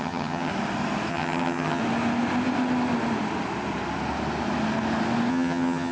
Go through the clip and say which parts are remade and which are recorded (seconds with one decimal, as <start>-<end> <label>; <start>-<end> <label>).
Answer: 0.0-0.5 remade; 0.5-1.1 recorded; 1.1-1.8 remade; 1.8-5.3 recorded; 5.3-5.9 remade